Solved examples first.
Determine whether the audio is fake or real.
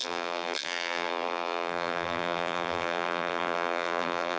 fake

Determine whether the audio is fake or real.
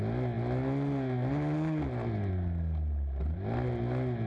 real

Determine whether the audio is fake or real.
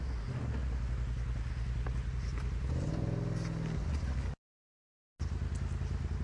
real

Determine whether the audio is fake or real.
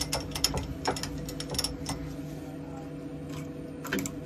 real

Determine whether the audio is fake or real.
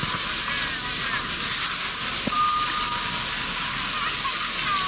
real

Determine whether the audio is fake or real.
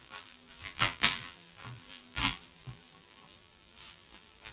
fake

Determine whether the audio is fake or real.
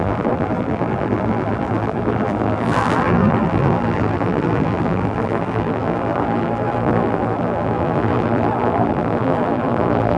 fake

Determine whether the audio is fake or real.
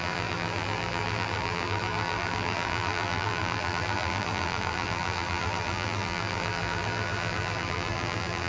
fake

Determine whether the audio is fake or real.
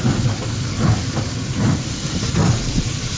real